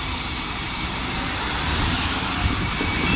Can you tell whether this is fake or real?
fake